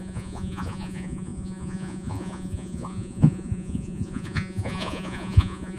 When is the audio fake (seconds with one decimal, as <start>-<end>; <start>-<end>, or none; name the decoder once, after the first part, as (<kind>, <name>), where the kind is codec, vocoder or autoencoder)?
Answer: 0.0-5.8 (vocoder, Vocos)